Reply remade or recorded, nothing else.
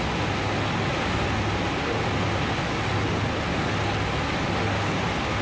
recorded